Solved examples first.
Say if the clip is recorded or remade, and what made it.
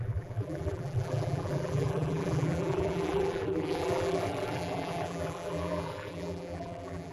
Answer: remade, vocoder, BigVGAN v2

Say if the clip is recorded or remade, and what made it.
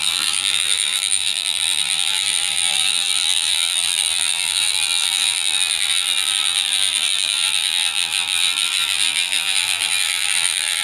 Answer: remade, vocoder, BigVGAN v2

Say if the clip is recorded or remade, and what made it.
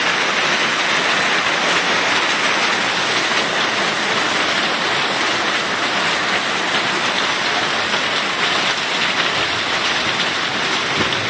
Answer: recorded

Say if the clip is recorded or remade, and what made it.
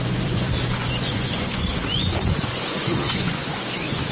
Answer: remade, vocoder, Vocos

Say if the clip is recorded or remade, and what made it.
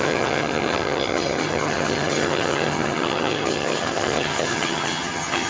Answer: remade, vocoder, HiFi-GAN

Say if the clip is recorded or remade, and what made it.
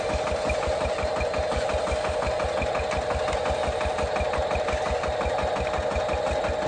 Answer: recorded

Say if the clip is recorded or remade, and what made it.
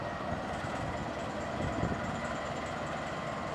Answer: recorded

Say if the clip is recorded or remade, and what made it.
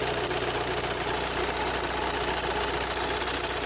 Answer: recorded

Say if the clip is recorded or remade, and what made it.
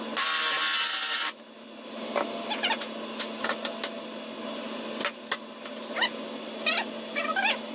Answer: recorded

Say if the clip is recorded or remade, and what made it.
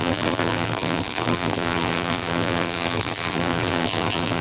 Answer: remade, vocoder, BigVGAN v2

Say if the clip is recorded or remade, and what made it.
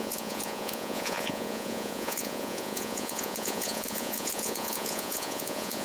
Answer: remade, vocoder, Vocos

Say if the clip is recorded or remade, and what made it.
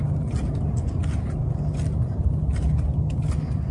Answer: recorded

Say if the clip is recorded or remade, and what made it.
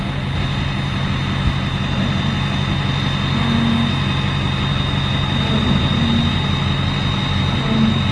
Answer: recorded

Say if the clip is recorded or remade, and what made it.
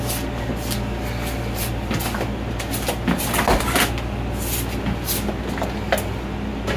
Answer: recorded